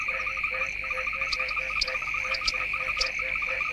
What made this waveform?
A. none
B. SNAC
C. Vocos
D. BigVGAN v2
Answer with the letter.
A